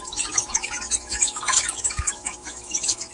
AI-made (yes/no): yes